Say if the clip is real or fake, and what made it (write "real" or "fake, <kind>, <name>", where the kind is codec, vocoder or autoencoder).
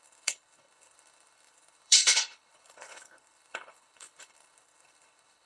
fake, codec, HILCodec